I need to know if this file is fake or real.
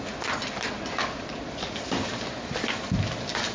real